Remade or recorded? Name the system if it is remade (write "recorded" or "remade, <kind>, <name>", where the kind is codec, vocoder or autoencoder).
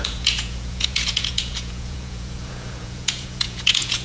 remade, vocoder, Vocos